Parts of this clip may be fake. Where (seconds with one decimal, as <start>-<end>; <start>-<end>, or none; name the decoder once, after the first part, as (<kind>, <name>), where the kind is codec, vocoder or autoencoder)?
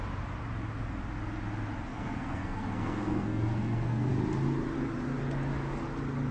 1.9-4.1 (codec, SNAC)